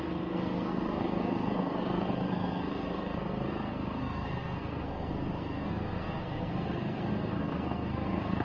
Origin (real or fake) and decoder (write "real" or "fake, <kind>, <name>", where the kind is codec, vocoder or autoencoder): fake, codec, SNAC